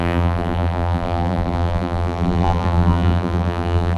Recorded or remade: remade